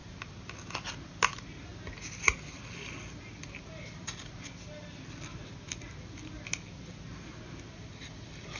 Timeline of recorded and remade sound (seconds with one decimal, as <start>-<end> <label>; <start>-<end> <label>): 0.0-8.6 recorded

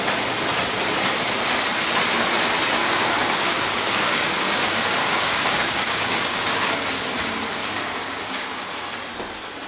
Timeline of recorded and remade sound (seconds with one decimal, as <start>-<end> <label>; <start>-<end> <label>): 0.0-2.8 recorded; 2.8-6.9 remade; 6.9-7.6 recorded; 7.6-8.7 remade; 8.7-9.7 recorded

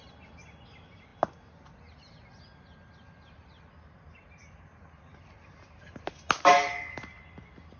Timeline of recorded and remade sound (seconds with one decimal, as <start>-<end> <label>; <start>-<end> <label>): 0.0-7.8 recorded

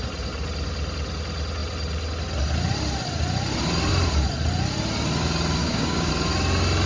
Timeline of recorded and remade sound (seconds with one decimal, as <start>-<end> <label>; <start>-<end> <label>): 0.0-5.6 recorded; 5.6-6.1 remade; 6.1-6.9 recorded

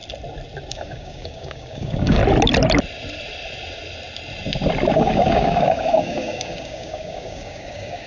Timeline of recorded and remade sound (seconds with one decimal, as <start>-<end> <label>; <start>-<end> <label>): 0.0-0.7 recorded; 0.7-2.2 remade; 2.2-4.9 recorded; 4.9-8.1 remade

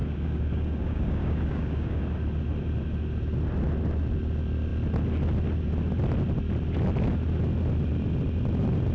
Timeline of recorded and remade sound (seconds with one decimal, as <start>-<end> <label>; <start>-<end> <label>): 0.0-2.0 remade; 2.0-8.9 recorded

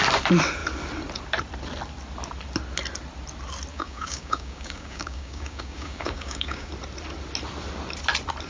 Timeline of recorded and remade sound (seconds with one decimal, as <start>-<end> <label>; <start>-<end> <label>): 0.0-3.7 recorded; 3.7-6.7 remade; 6.7-8.5 recorded